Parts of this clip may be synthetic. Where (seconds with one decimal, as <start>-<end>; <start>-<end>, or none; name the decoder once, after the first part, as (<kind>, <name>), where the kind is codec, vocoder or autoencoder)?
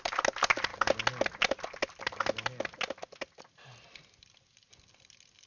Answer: none